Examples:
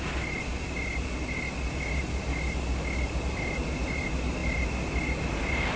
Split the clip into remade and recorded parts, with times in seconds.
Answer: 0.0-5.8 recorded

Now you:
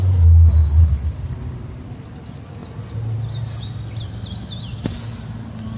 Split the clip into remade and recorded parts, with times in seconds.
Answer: 0.0-5.8 recorded

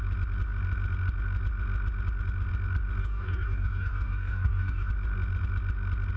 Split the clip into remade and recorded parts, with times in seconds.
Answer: 0.0-3.0 recorded; 3.0-4.9 remade; 4.9-6.2 recorded

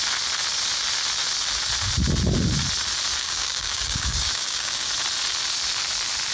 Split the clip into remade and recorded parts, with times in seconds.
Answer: 0.0-3.2 recorded; 3.2-4.9 remade; 4.9-6.3 recorded